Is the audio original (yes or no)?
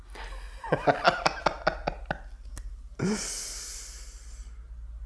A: yes